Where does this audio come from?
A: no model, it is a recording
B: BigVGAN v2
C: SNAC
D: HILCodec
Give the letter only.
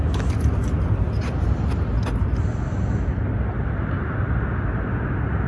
A